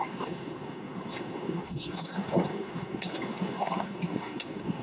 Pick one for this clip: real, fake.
fake